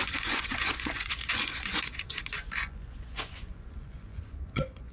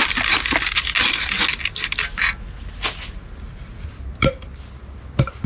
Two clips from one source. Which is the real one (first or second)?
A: second